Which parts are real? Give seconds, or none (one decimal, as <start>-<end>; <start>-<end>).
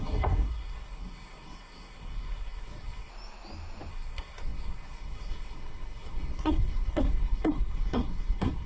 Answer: 3.1-3.9